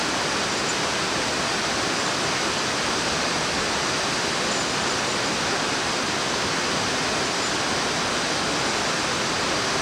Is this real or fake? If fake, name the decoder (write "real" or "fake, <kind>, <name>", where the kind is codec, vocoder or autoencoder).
real